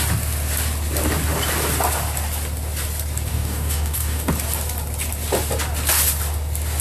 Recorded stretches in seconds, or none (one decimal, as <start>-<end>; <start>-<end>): 0.0-3.3; 4.3-6.8